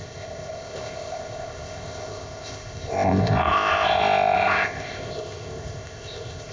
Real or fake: fake